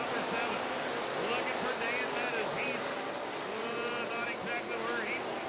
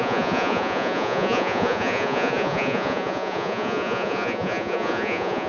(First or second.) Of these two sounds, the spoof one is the second